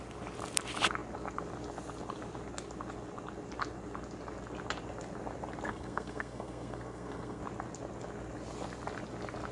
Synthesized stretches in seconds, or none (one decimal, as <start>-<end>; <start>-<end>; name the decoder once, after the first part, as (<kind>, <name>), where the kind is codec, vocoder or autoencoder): 5.7-7.4 (codec, SNAC)